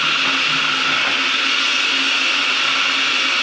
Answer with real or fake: real